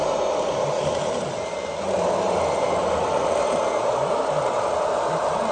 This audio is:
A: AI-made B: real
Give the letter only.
B